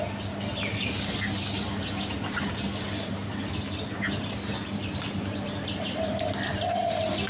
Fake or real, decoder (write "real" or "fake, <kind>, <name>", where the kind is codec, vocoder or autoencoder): real